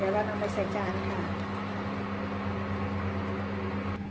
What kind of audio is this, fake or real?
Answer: real